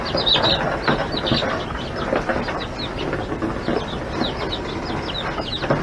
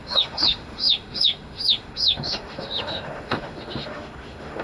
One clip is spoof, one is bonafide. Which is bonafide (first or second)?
first